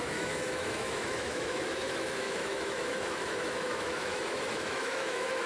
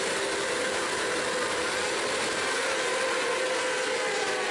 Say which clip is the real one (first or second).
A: second